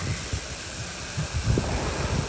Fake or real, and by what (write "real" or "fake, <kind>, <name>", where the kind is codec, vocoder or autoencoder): real